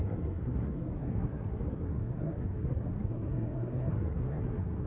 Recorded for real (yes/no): no